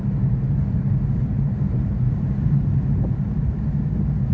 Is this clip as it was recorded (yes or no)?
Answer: no